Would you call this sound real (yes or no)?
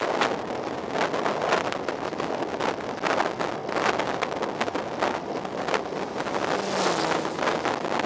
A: yes